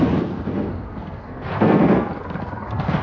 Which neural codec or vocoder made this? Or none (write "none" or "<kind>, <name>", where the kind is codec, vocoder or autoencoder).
codec, SNAC